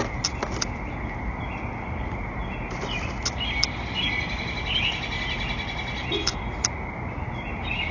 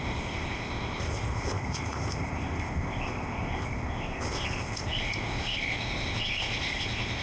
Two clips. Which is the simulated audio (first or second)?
second